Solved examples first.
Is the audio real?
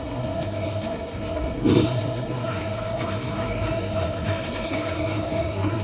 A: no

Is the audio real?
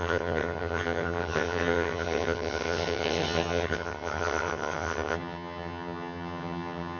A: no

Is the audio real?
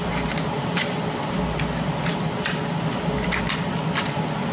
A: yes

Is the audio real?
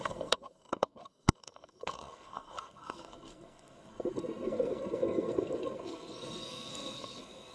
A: no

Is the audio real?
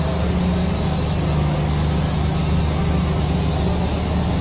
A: yes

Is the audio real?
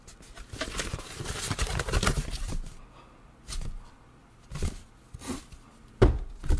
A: yes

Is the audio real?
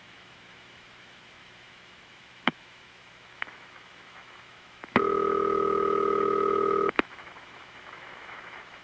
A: no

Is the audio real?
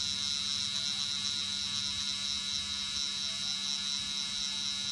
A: yes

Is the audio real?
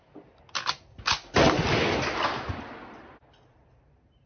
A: yes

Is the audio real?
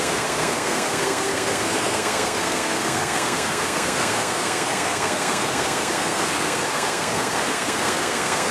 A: no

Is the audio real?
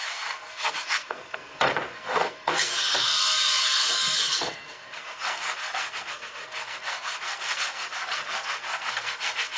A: no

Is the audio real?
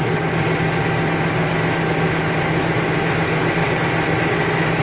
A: yes